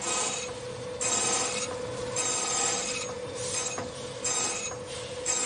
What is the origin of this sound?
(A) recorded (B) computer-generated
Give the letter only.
A